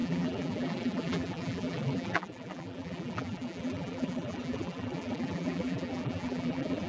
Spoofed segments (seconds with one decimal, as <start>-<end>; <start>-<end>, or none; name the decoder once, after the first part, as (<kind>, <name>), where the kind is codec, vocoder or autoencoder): 0.0-6.9 (vocoder, BigVGAN v2)